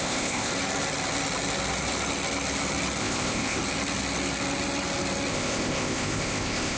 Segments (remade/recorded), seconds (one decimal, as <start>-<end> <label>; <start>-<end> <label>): 0.0-0.5 remade; 0.5-3.0 recorded; 3.0-3.6 remade; 3.6-5.3 recorded; 5.3-6.8 remade